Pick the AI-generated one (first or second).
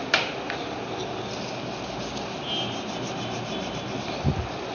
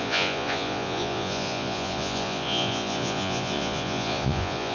second